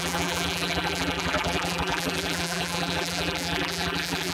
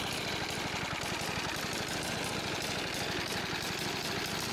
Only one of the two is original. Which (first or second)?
second